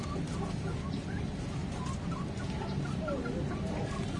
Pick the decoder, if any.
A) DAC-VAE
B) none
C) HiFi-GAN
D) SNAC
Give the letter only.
B